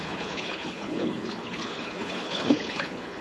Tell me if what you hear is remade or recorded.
remade